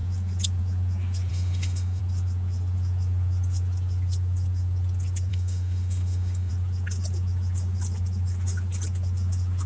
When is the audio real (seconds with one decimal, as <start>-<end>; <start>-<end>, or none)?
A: 0.0-1.3; 2.0-5.3; 6.5-9.7